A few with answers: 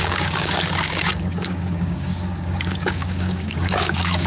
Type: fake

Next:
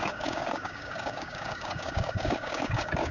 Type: fake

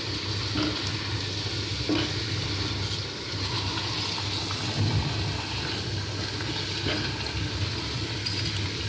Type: real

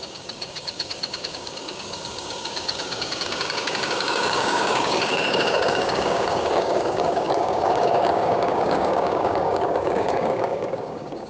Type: fake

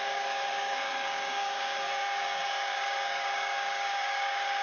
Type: fake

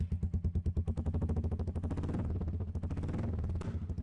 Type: real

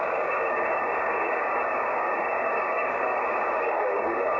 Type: fake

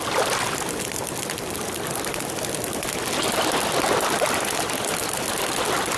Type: real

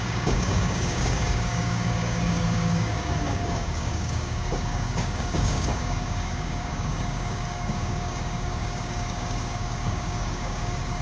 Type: fake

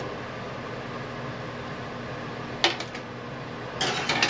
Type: real